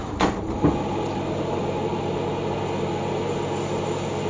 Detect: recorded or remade recorded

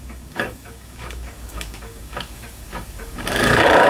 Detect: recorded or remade remade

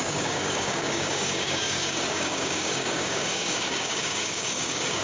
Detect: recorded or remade remade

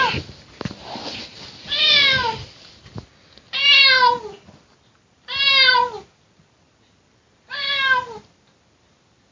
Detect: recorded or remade recorded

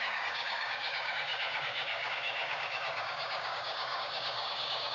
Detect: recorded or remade remade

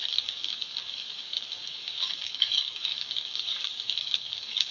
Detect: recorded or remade remade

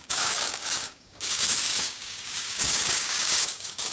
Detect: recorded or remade remade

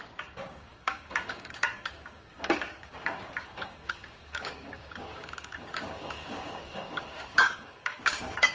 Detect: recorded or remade remade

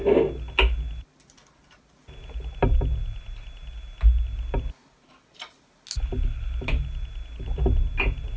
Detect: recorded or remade recorded